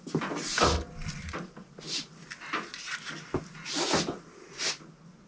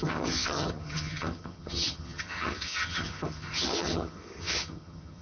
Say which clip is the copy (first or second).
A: second